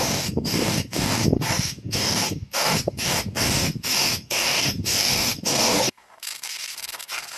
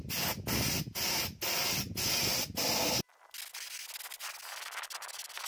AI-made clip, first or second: first